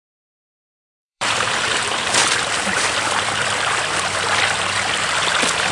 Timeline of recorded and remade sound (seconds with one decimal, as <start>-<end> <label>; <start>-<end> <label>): 0.0-5.7 remade